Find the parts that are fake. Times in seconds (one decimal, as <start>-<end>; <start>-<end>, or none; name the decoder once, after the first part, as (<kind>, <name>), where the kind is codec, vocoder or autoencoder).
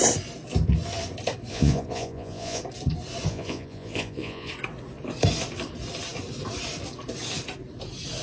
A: 1.5-2.6 (vocoder, Vocos); 3.3-4.5